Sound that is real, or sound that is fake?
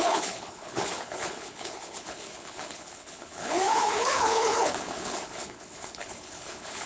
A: fake